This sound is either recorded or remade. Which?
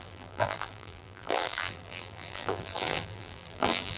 remade